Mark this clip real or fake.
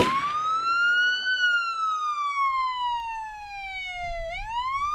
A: real